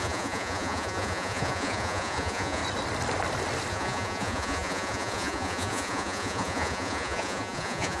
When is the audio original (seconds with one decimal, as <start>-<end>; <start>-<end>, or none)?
2.6-3.7